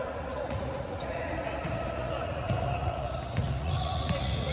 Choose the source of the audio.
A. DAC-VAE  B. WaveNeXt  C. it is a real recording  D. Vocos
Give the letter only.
D